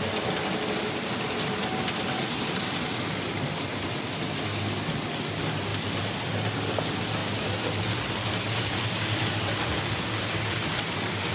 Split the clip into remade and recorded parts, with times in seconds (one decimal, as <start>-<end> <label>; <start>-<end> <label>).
0.0-11.3 recorded